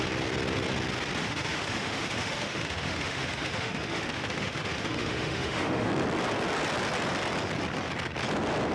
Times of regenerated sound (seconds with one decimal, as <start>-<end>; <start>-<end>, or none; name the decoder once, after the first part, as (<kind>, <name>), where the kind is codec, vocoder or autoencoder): 1.2-5.9 (autoencoder, DAC-VAE)